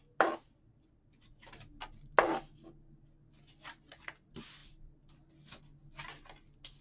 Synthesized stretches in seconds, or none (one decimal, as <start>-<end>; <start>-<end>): none